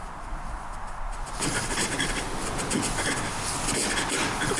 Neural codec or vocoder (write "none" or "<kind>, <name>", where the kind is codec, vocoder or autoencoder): none